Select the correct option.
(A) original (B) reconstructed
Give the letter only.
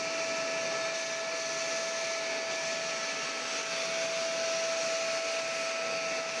A